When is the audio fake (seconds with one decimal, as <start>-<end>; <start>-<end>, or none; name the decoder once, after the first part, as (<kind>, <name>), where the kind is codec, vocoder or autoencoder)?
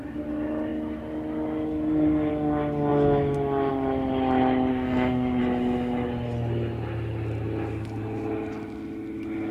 4.7-5.4 (codec, SNAC)